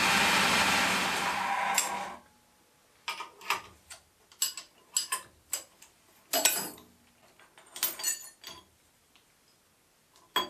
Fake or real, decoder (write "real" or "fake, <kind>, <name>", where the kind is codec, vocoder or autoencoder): real